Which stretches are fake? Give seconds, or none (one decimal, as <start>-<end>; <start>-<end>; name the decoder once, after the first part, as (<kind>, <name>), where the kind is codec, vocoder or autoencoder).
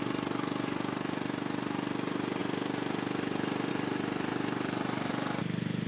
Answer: none